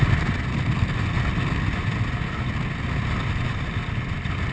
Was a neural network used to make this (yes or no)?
no